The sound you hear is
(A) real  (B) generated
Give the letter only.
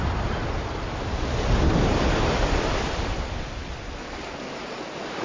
B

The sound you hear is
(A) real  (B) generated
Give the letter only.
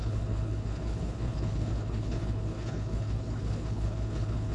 B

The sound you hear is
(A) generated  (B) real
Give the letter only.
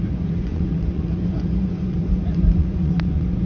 A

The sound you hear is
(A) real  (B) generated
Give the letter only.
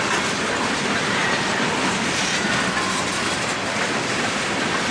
A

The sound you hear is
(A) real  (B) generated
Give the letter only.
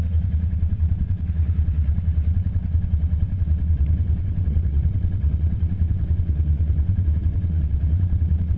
B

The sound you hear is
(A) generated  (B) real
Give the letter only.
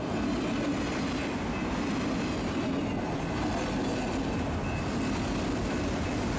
B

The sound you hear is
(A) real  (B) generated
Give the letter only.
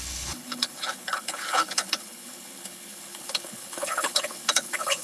B